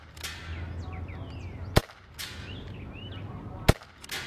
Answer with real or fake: real